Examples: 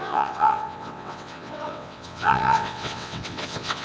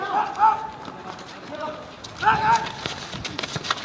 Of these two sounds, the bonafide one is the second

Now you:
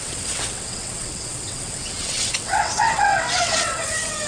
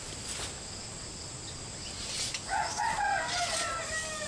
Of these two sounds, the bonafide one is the second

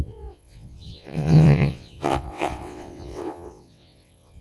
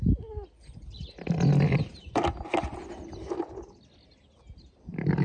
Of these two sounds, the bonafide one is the second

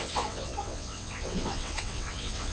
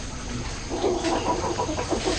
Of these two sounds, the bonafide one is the second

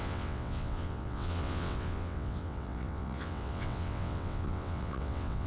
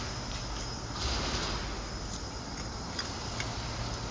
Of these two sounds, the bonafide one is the second